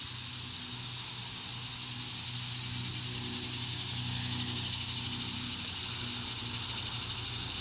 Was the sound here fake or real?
real